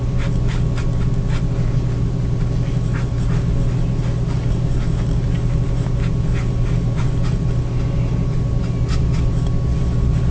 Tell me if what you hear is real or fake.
real